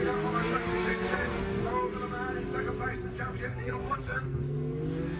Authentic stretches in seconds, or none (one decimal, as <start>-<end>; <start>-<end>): 0.0-0.9; 1.7-3.5